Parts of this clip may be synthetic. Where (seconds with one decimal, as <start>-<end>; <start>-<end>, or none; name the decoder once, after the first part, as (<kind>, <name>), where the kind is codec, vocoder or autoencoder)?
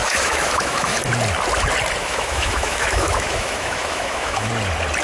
0.0-1.0 (autoencoder, DAC-VAE); 2.0-4.5